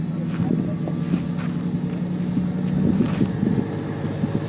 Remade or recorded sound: recorded